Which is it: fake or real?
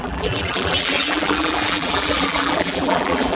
fake